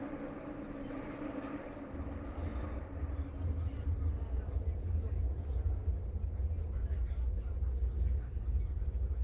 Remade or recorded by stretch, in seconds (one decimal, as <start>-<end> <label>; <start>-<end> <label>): 0.0-9.2 recorded